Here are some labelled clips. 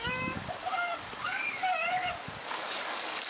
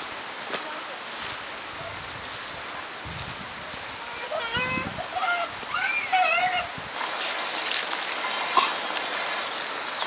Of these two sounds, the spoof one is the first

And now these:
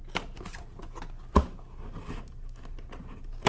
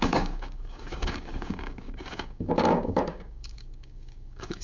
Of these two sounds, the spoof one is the second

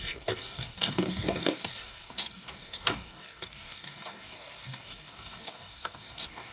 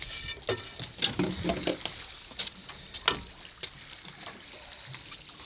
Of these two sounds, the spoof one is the first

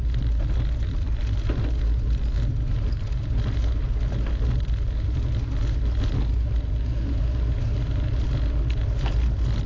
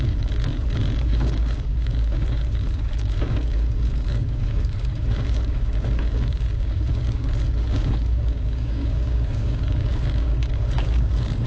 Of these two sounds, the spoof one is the second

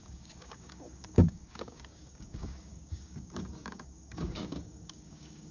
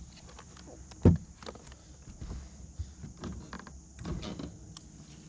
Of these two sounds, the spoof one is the first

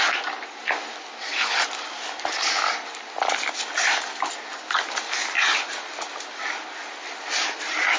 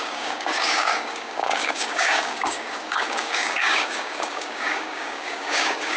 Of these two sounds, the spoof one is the second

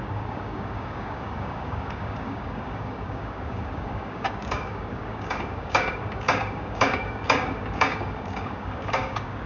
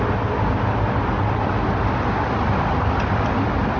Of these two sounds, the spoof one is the first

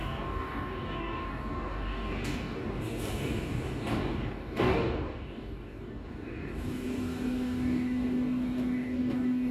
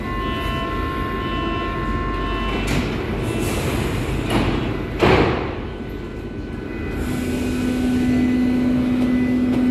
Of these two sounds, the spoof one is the first